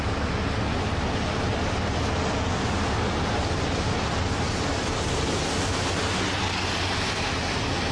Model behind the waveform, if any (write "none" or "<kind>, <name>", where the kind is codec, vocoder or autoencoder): none